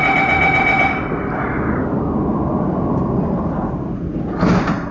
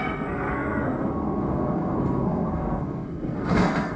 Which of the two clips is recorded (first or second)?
first